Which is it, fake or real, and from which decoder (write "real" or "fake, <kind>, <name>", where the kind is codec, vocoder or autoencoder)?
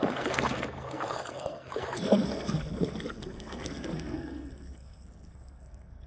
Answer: fake, codec, SNAC